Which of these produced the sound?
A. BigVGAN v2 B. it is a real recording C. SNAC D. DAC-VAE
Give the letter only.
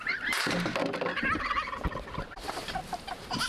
B